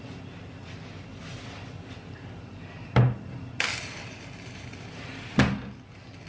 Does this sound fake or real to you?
real